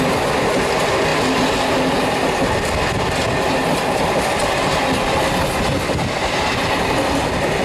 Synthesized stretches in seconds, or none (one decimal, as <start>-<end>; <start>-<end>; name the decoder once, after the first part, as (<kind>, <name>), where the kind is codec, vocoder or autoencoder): none